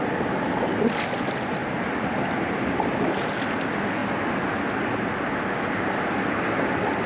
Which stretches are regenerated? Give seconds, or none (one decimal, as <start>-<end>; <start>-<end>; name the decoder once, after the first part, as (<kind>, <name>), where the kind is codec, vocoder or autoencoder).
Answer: 1.6-2.1 (vocoder, BigVGAN v2)